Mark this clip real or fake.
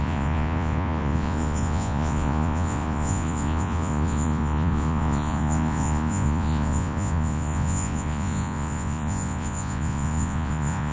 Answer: fake